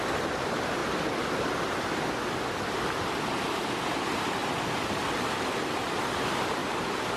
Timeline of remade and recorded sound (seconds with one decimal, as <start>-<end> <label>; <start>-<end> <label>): 0.0-0.8 remade; 0.8-3.2 recorded; 3.2-4.4 remade; 4.4-6.0 recorded; 6.0-7.2 remade